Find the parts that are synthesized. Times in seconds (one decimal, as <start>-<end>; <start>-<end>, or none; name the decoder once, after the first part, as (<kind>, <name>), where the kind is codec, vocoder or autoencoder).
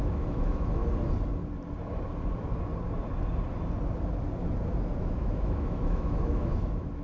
0.0-0.8 (autoencoder, DAC-VAE); 5.0-7.0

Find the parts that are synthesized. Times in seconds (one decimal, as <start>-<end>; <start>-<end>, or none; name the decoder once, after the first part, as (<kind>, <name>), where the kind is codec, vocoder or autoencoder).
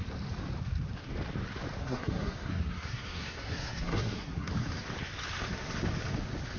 1.8-4.5 (codec, SNAC)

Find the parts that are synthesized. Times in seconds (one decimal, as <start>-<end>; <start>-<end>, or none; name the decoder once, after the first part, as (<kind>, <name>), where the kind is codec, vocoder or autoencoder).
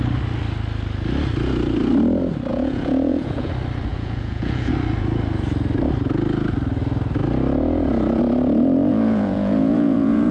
2.5-3.5 (vocoder, Vocos); 3.9-4.7; 8.9-10.3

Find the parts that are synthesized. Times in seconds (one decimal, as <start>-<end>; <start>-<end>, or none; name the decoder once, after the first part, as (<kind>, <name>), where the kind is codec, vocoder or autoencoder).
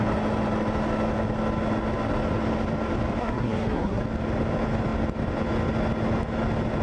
3.2-4.0 (codec, SNAC)